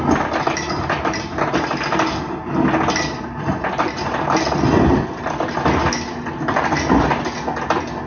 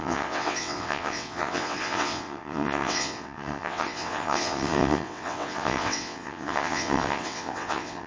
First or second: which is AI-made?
second